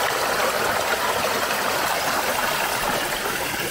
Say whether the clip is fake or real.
real